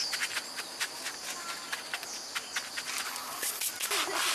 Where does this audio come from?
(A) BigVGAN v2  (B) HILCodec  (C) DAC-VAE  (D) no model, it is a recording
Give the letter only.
D